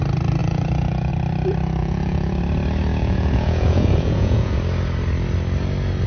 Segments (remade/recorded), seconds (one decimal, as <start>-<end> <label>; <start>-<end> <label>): 0.0-0.4 recorded; 0.4-1.1 remade; 1.1-1.8 recorded; 1.8-2.4 remade; 2.4-2.9 recorded; 2.9-4.6 remade; 4.6-6.1 recorded